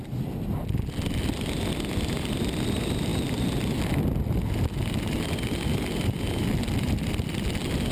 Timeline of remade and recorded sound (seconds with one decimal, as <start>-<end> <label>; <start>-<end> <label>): 0.0-7.9 recorded